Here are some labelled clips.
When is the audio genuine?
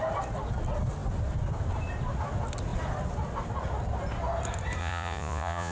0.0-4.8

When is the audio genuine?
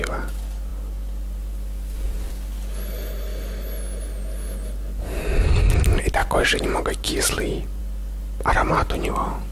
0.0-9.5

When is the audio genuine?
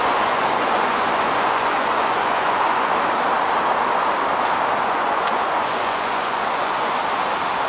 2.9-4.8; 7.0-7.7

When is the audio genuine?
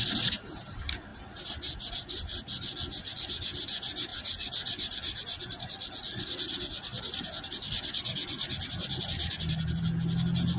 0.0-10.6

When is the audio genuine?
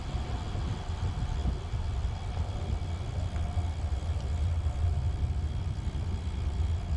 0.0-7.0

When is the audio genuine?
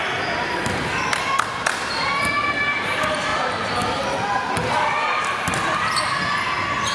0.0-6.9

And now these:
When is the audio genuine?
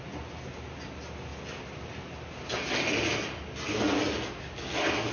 0.0-5.1